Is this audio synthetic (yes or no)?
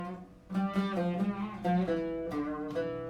no